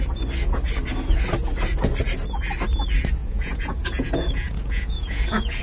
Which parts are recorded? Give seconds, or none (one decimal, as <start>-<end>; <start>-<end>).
0.0-3.2